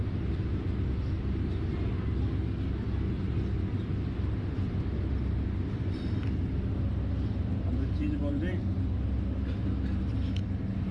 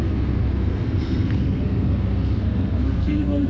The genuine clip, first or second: first